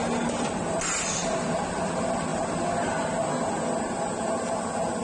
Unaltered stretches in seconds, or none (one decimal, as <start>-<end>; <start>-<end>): 0.0-5.0